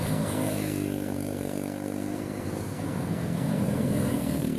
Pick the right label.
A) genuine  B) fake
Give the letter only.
B